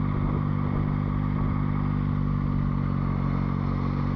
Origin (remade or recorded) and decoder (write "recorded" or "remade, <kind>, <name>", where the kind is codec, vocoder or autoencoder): recorded